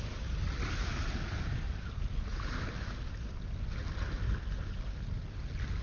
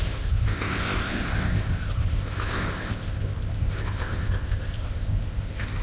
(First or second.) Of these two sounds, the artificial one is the second